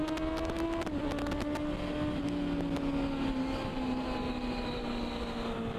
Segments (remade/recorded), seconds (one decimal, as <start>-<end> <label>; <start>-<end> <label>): 0.0-5.8 recorded